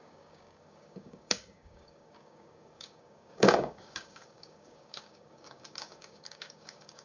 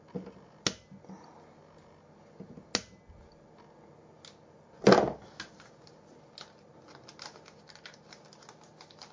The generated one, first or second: first